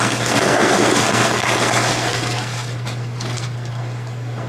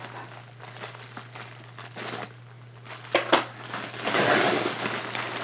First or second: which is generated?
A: first